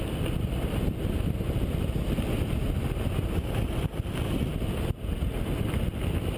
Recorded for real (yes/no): yes